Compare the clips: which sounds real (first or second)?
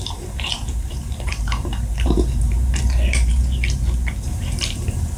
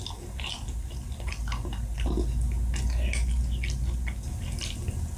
second